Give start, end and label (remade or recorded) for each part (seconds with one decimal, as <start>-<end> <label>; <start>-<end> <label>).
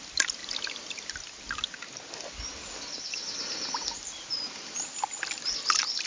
0.0-6.1 recorded